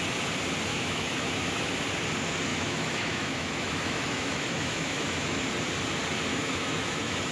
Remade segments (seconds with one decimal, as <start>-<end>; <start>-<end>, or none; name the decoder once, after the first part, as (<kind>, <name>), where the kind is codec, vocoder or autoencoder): 0.7-1.7 (autoencoder, DAC-VAE); 2.5-5.5; 6.3-7.3